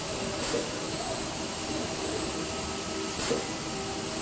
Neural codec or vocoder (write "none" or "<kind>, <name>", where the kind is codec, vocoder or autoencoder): none